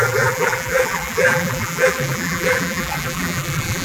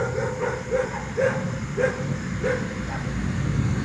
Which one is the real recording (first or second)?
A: second